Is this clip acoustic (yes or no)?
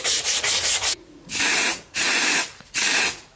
no